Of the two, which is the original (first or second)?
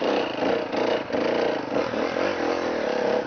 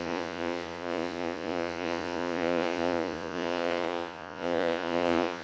first